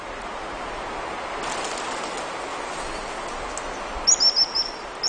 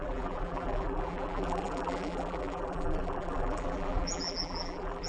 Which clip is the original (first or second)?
first